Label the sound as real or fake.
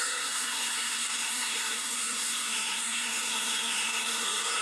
fake